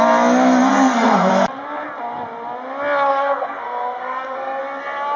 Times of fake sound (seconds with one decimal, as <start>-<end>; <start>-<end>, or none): 0.7-1.3; 3.1-4.6